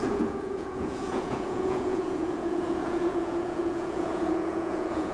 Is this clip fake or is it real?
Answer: fake